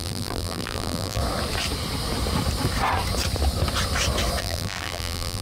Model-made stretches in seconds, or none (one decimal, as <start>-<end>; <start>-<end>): 0.0-1.2; 4.4-5.4